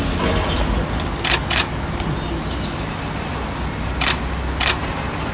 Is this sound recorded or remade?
recorded